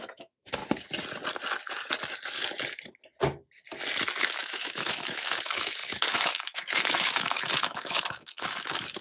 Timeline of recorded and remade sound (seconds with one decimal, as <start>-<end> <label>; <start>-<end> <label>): 0.0-0.6 remade; 0.6-4.2 recorded; 4.2-9.0 remade